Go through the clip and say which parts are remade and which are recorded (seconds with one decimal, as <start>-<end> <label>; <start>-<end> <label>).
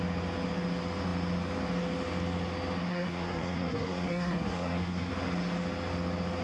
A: 0.0-2.9 recorded; 2.9-5.1 remade; 5.1-6.4 recorded